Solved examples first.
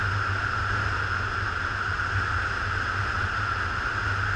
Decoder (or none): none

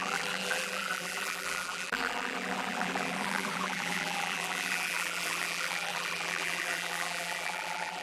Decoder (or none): vocoder, BigVGAN v2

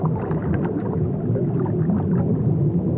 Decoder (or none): none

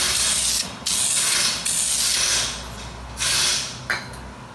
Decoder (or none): none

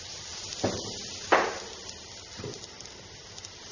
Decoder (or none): none